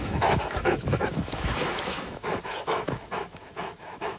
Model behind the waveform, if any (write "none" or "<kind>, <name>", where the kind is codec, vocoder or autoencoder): autoencoder, DAC-VAE